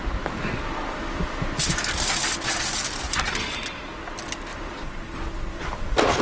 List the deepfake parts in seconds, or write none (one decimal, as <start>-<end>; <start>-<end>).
2.7-3.3; 4.5-6.2